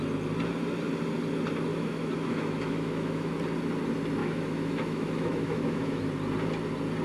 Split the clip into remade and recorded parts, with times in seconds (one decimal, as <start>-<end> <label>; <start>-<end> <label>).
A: 0.0-1.7 recorded; 1.7-3.4 remade; 3.4-4.2 recorded; 4.2-6.0 remade; 6.0-7.0 recorded